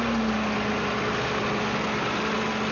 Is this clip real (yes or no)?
yes